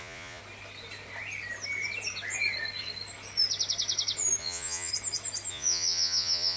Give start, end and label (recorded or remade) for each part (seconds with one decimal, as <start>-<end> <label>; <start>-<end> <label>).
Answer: 0.0-0.4 remade; 0.4-4.4 recorded; 4.4-4.9 remade; 4.9-5.5 recorded; 5.5-6.6 remade